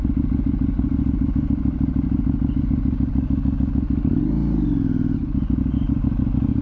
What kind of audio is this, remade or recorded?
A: recorded